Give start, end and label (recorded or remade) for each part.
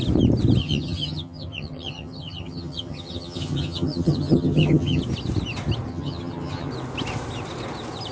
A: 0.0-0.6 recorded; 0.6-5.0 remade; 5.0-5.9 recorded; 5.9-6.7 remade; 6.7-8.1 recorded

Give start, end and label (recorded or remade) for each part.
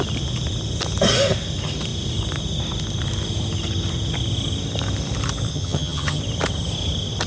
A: 0.0-5.5 recorded; 5.5-6.2 remade; 6.2-7.3 recorded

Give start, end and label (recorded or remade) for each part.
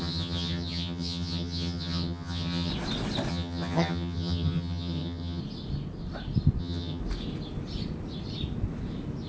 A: 0.0-2.7 remade; 2.7-3.3 recorded; 3.3-5.4 remade; 5.4-6.6 recorded; 6.6-7.0 remade; 7.0-9.3 recorded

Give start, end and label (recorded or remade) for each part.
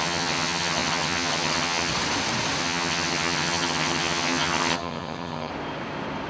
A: 0.0-1.9 remade; 1.9-2.6 recorded; 2.6-5.5 remade; 5.5-6.3 recorded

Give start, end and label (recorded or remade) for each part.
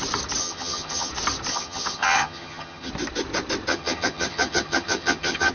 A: 0.0-0.4 recorded; 0.4-1.1 remade; 1.1-1.5 recorded; 1.5-2.9 remade; 2.9-3.7 recorded; 3.7-5.5 remade